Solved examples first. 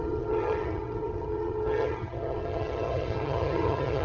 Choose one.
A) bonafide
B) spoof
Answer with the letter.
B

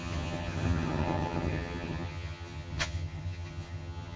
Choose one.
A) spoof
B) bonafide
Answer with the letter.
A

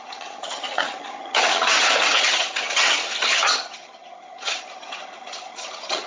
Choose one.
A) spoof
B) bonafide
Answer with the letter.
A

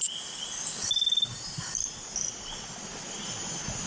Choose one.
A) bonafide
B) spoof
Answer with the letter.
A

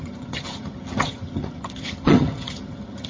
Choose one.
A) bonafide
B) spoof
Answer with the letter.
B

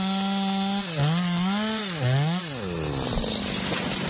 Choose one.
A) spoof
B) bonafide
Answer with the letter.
B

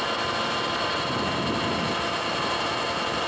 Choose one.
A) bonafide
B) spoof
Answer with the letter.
A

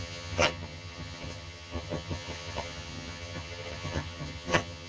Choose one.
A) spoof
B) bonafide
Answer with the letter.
A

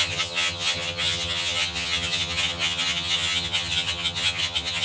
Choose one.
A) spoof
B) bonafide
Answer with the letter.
A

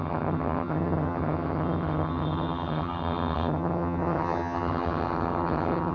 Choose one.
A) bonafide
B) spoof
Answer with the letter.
B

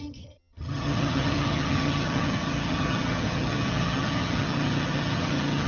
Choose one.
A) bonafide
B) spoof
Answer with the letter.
B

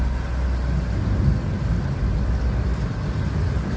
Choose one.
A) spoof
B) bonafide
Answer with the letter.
B